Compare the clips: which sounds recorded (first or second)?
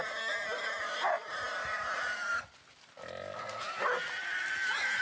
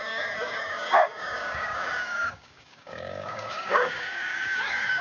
first